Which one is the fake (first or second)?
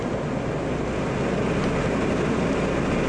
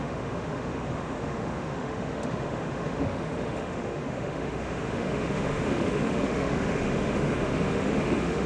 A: second